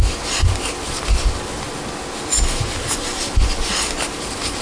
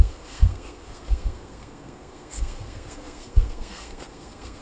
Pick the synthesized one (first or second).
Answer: second